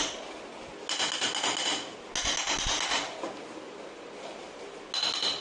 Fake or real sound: real